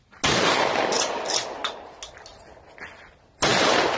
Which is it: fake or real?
real